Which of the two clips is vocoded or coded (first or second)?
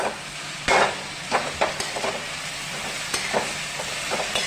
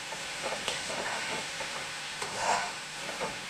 second